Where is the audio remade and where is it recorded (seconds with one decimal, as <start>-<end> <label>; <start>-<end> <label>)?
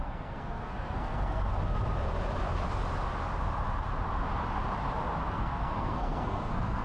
0.0-1.5 remade; 1.5-5.3 recorded; 5.3-6.8 remade